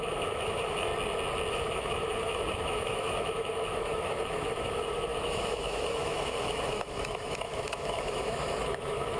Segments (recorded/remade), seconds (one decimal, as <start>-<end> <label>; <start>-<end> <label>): 0.0-0.9 remade; 0.9-1.5 recorded; 1.5-9.2 remade